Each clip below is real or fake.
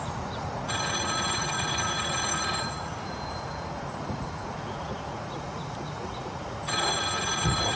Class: fake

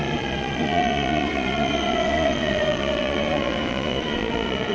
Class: fake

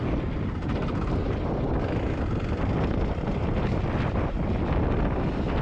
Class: real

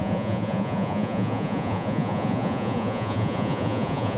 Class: fake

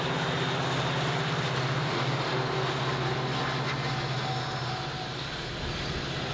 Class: real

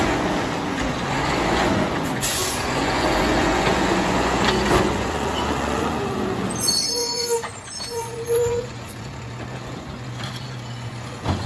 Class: fake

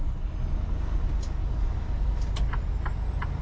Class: real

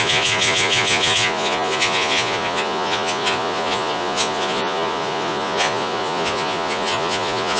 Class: fake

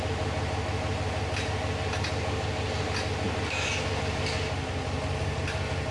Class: real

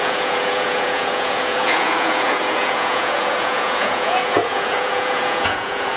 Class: fake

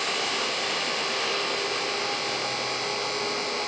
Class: real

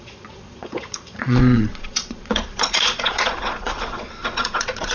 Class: fake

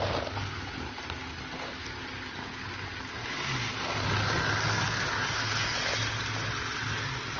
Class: real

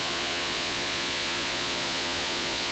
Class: fake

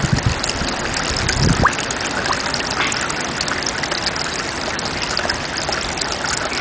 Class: real